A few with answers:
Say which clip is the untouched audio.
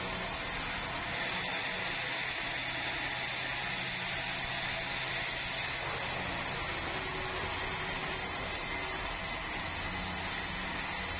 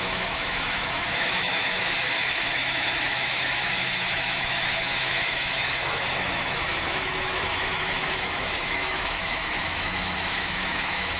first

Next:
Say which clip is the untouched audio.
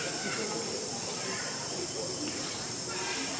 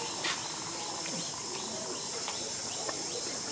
first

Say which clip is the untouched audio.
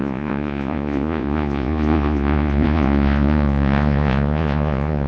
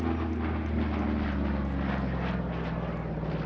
second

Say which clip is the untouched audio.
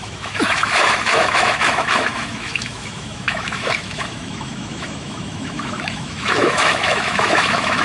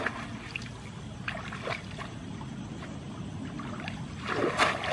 second